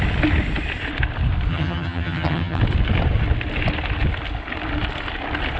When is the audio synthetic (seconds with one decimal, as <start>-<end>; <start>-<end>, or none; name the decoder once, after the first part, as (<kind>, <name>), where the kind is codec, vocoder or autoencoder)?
1.5-2.6 (vocoder, HiFi-GAN)